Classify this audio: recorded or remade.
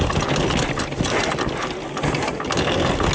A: recorded